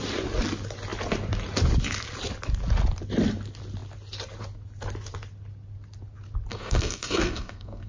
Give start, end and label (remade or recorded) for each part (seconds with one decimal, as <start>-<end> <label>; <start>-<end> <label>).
0.0-6.5 recorded; 6.5-7.9 remade